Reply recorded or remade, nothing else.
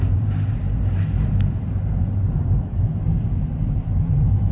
remade